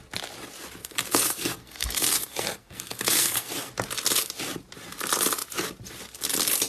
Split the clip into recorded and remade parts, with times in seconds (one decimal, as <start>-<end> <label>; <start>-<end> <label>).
0.0-0.8 recorded; 0.8-3.7 remade; 3.7-6.7 recorded